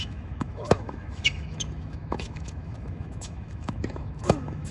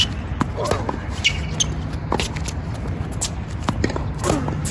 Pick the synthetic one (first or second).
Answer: first